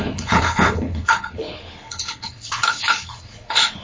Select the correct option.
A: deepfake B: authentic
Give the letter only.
A